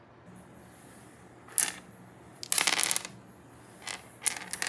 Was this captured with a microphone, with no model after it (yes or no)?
yes